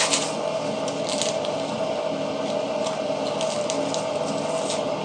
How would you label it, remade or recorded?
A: recorded